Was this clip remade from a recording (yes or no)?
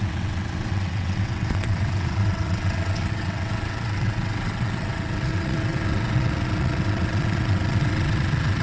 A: yes